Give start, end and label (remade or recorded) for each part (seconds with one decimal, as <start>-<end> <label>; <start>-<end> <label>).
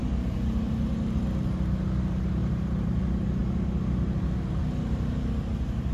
0.0-0.9 remade; 0.9-2.4 recorded; 2.4-3.0 remade; 3.0-5.9 recorded